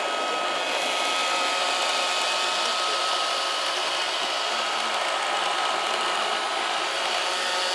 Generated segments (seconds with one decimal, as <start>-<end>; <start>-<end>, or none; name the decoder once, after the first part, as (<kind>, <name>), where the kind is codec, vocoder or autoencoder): 1.2-1.9 (vocoder, BigVGAN v2); 3.0-7.2